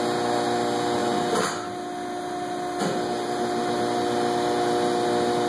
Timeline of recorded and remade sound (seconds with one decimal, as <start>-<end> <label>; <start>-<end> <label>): 0.0-5.5 recorded